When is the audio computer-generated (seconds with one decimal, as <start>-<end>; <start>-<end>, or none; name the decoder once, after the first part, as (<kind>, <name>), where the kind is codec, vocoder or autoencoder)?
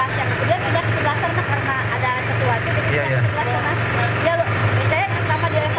none